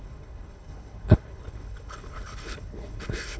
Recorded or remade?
remade